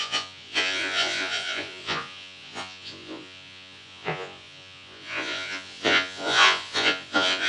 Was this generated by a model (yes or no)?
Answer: yes